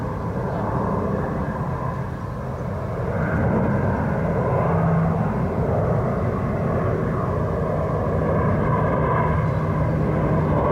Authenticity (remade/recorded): recorded